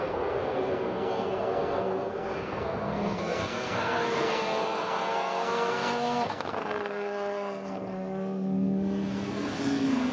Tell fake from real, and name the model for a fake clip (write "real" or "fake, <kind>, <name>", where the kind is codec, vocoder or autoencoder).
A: fake, codec, SNAC